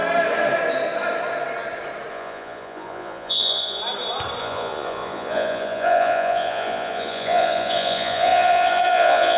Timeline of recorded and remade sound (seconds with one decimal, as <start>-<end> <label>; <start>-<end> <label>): 0.0-2.1 recorded; 2.1-3.8 remade; 3.8-4.4 recorded; 4.4-9.4 remade